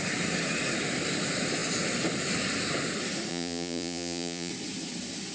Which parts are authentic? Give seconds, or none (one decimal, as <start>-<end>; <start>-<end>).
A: 0.0-3.3; 4.5-5.3